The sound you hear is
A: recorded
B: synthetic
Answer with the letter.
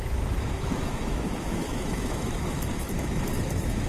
B